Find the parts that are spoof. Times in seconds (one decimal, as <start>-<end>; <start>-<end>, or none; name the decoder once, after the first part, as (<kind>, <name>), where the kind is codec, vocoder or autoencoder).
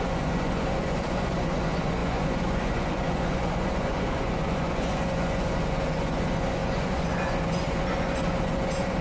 0.0-9.0 (vocoder, Vocos)